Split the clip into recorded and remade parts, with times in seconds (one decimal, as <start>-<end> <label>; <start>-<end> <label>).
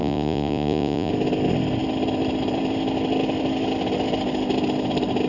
0.0-1.1 remade; 1.1-5.3 recorded